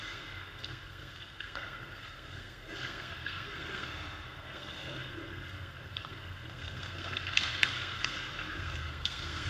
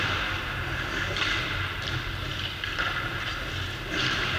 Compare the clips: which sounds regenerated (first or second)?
first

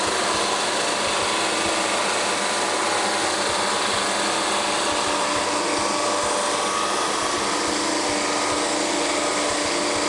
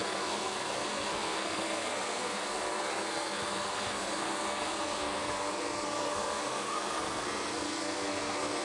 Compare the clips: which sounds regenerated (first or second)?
second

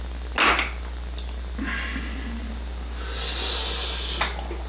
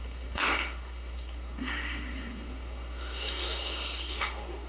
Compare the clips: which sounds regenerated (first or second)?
second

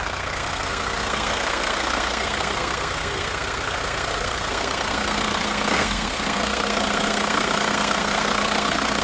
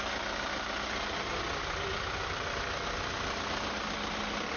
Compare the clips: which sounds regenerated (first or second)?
first